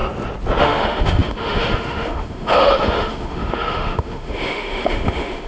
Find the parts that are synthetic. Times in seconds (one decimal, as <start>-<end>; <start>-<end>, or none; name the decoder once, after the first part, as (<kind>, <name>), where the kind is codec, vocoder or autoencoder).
0.6-5.5 (autoencoder, DAC-VAE)